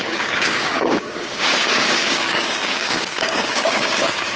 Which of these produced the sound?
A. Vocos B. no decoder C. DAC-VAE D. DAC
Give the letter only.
D